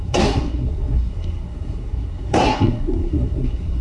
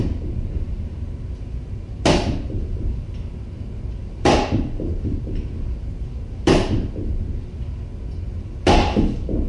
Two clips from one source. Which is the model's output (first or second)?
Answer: first